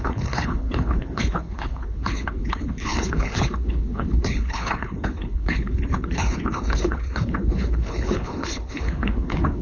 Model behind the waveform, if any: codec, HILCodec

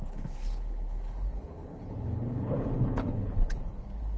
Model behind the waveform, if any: codec, HILCodec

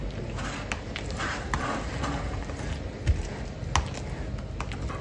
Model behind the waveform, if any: none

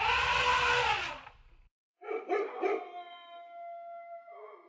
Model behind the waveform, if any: none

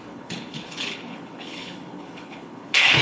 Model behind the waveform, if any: codec, HILCodec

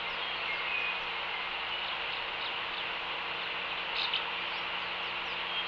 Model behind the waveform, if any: none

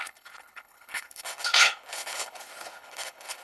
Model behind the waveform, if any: codec, HILCodec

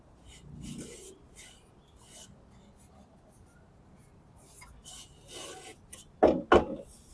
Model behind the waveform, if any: none